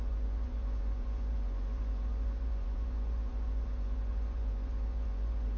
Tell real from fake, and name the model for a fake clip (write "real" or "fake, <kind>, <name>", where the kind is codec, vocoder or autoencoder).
fake, vocoder, Vocos